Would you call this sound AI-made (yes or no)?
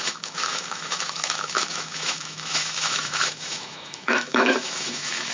yes